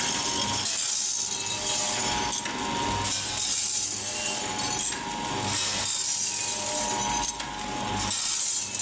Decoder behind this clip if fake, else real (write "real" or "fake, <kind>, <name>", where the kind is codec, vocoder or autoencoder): real